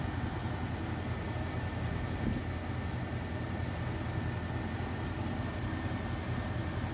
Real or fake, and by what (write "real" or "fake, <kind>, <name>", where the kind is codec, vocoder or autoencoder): real